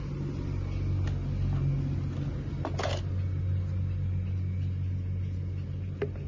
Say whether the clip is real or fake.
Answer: real